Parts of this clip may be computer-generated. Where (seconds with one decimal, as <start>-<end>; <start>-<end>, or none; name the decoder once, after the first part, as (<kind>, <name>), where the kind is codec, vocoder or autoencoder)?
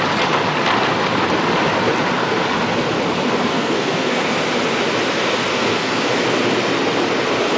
3.5-4.3 (codec, SNAC); 5.5-6.1